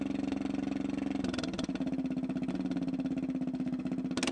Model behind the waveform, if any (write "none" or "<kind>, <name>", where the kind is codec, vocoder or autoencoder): none